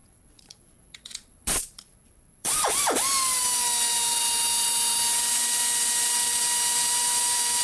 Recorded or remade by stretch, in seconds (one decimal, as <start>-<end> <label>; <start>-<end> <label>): 0.0-2.8 remade; 2.8-7.6 recorded